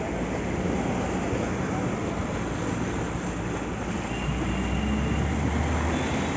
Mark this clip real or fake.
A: real